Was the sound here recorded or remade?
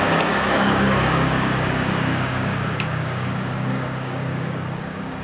remade